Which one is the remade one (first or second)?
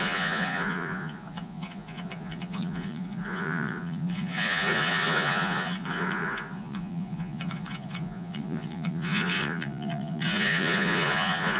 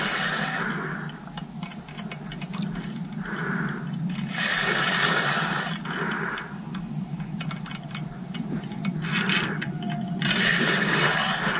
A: first